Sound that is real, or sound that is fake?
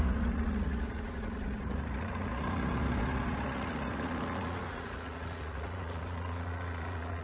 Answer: fake